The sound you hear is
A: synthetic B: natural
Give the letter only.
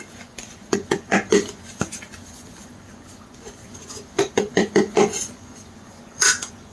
A